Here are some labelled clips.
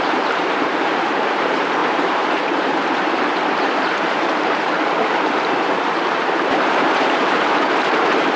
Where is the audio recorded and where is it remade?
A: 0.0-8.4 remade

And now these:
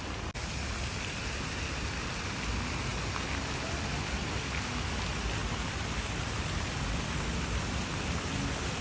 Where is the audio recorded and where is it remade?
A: 0.0-5.4 recorded; 5.4-7.6 remade; 7.6-8.8 recorded

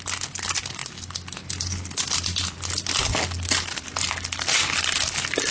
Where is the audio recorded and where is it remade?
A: 0.0-5.5 recorded

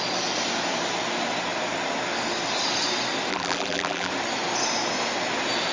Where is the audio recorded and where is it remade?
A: 0.0-3.3 recorded; 3.3-4.1 remade; 4.1-5.7 recorded

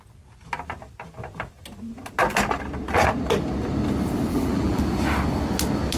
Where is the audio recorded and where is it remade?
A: 0.0-4.3 recorded; 4.3-4.8 remade; 4.8-6.0 recorded

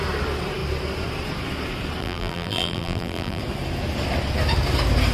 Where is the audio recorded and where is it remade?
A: 0.0-2.0 recorded; 2.0-3.4 remade; 3.4-5.1 recorded

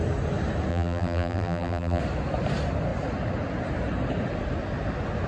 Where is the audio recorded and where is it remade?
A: 0.0-0.7 recorded; 0.7-2.0 remade; 2.0-5.3 recorded